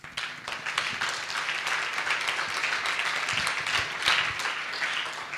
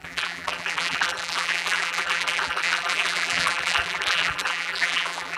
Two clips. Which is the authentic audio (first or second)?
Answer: first